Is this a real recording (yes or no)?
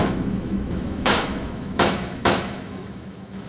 no